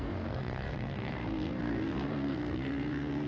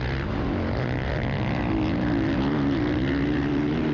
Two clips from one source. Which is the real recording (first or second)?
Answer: second